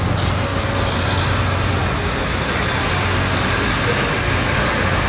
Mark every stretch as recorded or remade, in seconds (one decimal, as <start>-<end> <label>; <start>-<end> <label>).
0.0-5.1 recorded